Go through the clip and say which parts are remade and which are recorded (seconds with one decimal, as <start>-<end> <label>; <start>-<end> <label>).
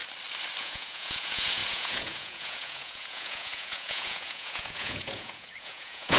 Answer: 0.0-0.6 recorded; 0.6-6.2 remade